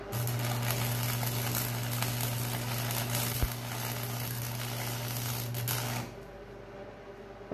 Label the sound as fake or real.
real